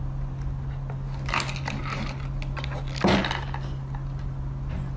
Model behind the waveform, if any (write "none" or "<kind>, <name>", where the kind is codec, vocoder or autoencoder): none